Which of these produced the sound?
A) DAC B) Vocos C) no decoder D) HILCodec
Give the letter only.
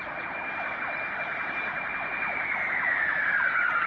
C